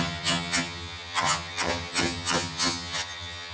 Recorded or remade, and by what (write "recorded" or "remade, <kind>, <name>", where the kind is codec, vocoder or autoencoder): remade, vocoder, HiFi-GAN